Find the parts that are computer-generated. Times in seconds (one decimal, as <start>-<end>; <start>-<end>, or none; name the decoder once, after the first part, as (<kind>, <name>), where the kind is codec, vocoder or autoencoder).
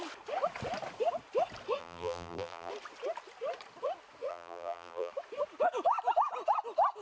1.8-2.7 (vocoder, BigVGAN v2); 4.3-5.1